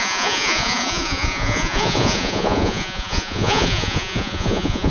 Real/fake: fake